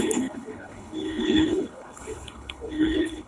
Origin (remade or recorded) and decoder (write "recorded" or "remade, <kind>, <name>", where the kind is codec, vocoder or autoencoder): remade, codec, HILCodec